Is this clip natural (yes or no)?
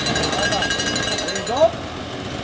yes